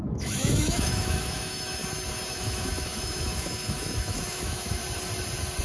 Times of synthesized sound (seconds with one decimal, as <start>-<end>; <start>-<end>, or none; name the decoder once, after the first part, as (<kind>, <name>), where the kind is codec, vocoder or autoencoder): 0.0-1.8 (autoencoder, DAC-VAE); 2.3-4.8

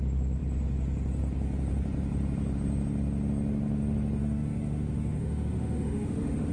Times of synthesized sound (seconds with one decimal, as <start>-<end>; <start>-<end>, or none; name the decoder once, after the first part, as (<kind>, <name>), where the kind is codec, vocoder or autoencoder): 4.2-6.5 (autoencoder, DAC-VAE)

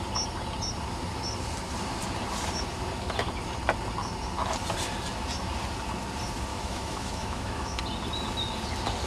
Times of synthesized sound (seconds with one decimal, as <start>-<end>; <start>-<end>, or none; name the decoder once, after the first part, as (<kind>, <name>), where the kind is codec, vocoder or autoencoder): 6.5-7.8 (autoencoder, DAC-VAE)

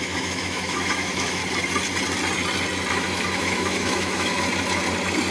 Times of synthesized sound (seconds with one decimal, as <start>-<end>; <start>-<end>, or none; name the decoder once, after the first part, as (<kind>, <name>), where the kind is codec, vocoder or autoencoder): 0.0-1.4 (autoencoder, DAC-VAE); 2.9-4.3

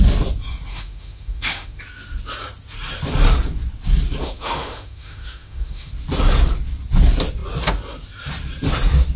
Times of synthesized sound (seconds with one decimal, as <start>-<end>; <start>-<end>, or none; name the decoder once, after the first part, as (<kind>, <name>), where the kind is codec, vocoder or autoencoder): 0.7-1.8 (autoencoder, DAC-VAE); 4.2-5.9